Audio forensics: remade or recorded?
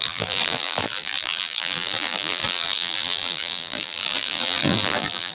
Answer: remade